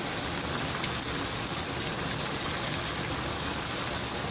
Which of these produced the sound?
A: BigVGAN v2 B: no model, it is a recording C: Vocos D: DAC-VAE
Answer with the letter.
B